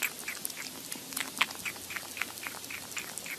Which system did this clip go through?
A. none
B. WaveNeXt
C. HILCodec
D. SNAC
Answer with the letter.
A